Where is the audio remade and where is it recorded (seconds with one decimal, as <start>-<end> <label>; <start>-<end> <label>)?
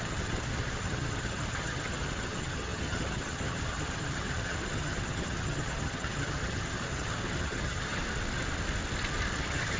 0.0-8.0 remade; 8.0-9.4 recorded; 9.4-9.8 remade